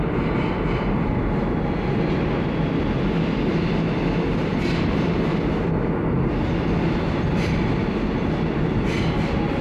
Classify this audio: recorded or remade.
recorded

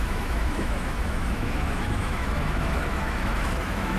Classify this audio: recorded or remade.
remade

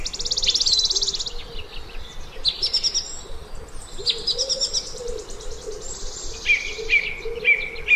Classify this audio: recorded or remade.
recorded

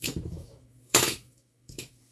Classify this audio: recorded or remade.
remade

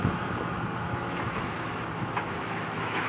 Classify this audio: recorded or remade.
remade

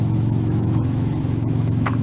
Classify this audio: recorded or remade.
remade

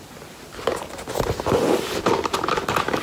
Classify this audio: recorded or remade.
recorded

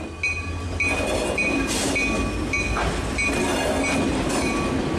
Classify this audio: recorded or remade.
recorded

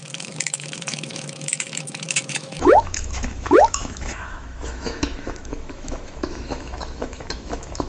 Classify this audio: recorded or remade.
remade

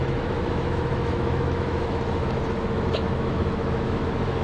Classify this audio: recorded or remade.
remade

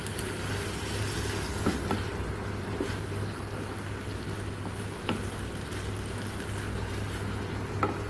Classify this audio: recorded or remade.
recorded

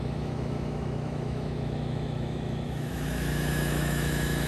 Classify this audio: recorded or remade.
remade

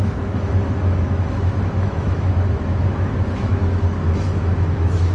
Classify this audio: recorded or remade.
remade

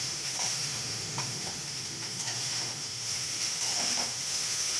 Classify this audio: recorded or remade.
remade